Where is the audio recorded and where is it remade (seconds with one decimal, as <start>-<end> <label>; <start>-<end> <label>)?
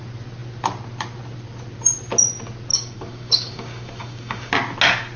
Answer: 0.0-2.7 recorded; 2.7-4.5 remade; 4.5-5.2 recorded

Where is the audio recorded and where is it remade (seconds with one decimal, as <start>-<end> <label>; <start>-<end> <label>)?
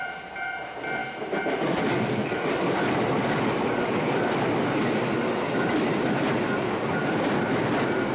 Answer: 0.0-8.1 recorded